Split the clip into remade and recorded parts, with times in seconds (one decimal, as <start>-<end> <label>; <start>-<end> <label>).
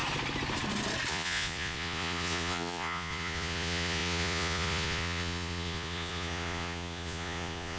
0.0-1.1 recorded; 1.1-7.8 remade